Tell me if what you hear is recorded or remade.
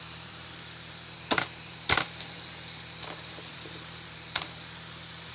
remade